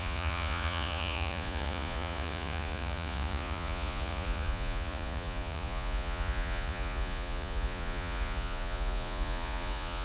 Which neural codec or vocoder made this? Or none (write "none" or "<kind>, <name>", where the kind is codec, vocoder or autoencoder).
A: vocoder, Vocos